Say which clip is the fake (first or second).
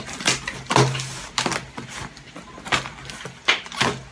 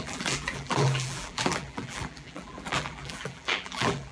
second